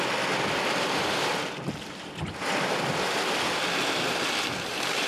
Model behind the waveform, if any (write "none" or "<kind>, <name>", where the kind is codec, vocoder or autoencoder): none